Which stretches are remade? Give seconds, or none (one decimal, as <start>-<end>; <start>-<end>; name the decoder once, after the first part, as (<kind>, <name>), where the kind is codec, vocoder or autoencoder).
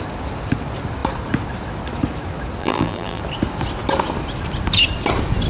2.6-3.2 (vocoder, BigVGAN v2)